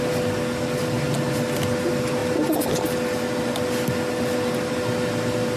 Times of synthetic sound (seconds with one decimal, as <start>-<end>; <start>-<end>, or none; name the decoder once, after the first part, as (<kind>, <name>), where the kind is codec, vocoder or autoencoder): none